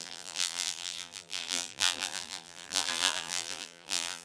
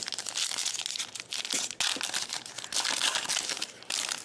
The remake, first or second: first